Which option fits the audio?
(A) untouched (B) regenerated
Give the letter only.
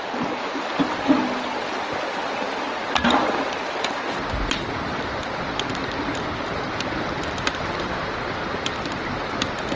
A